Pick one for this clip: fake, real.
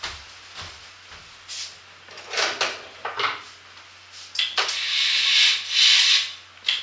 real